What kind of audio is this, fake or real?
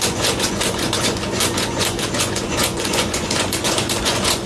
fake